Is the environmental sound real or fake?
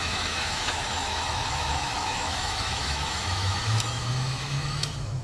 fake